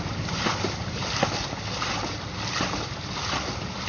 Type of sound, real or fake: real